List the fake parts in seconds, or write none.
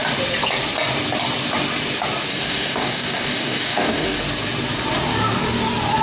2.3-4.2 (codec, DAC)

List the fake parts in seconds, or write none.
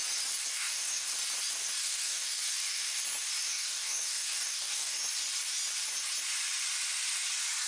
0.5-1.1 (codec, DAC); 1.8-3.0; 3.5-5.0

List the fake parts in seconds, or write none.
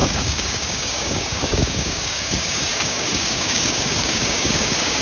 0.0-5.0 (codec, DAC)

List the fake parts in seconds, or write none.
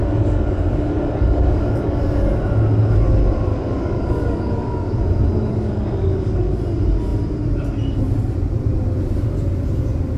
0.0-2.0 (codec, DAC); 3.5-5.0; 5.5-6.6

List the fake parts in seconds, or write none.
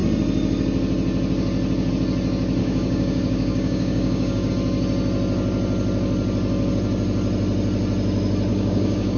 2.6-4.5 (codec, DAC); 8.5-9.2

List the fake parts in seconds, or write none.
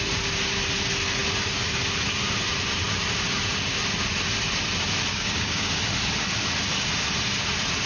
5.1-5.7 (codec, DAC)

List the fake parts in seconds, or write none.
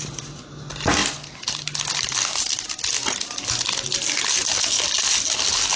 none